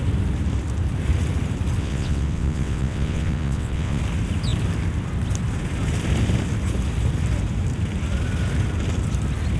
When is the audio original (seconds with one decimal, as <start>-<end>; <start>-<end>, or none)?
0.0-1.8; 4.0-9.6